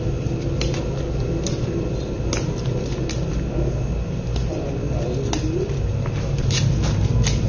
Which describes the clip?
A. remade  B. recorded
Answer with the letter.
B